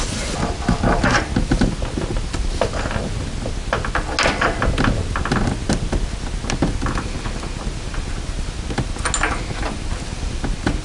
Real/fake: real